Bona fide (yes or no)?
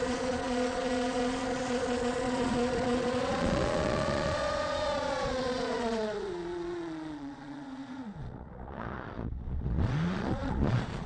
no